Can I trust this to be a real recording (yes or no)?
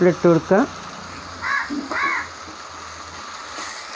yes